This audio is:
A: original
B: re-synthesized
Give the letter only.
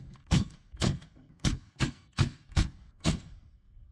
B